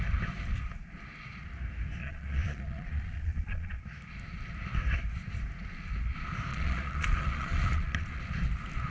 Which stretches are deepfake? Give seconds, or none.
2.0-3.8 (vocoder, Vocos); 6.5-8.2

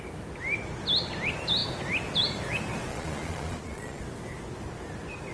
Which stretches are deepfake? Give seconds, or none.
2.9-4.0 (vocoder, Vocos)